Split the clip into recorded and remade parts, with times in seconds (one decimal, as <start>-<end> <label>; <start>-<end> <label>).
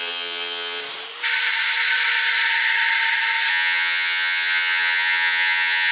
0.0-0.8 remade; 0.8-3.5 recorded; 3.5-5.9 remade